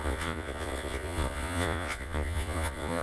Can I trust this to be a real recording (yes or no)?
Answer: no